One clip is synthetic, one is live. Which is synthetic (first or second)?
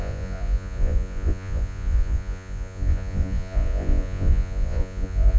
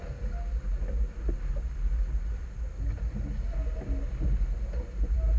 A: first